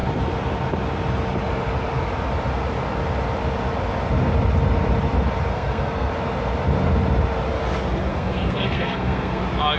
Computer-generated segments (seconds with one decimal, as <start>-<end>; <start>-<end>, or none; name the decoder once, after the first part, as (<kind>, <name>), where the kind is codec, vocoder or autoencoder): 5.5-6.1 (codec, SNAC); 8.1-9.4